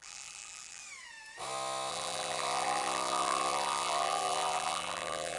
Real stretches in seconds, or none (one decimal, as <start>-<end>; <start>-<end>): 0.8-1.9

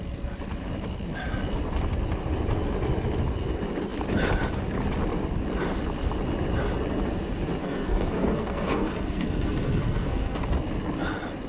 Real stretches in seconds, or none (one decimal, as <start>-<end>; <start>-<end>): 0.0-7.6; 10.4-11.5

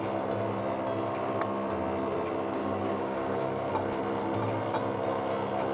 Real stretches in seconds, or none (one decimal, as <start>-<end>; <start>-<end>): 0.0-2.6; 3.7-5.7